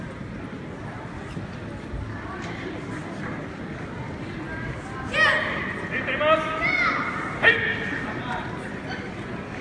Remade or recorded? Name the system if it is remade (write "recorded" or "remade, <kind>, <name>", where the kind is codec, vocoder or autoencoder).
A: recorded